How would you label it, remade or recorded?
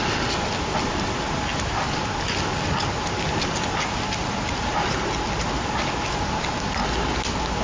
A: recorded